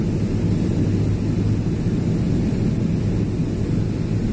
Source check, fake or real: real